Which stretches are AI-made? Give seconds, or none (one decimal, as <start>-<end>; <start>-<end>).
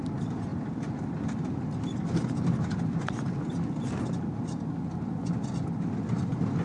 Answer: none